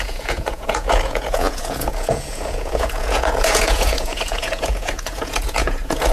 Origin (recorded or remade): remade